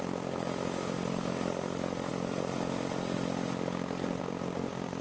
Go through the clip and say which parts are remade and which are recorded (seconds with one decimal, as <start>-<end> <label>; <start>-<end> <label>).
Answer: 0.0-5.0 recorded